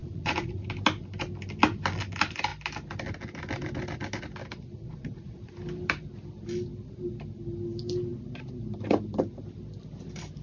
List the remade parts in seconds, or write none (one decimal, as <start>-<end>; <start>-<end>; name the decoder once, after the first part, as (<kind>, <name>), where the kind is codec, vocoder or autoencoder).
0.0-0.7 (vocoder, Vocos); 4.7-5.5